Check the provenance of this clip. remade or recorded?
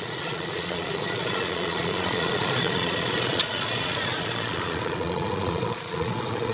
remade